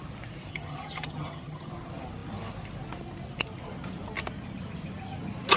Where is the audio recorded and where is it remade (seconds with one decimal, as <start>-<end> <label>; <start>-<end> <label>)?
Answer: 0.0-0.5 recorded; 0.5-1.7 remade; 1.7-5.6 recorded